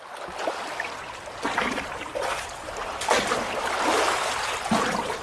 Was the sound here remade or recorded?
recorded